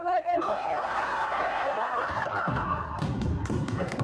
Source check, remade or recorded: remade